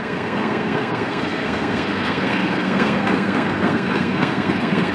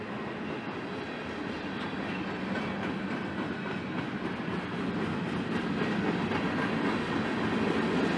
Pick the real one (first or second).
second